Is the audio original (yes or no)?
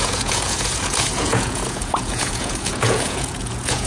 no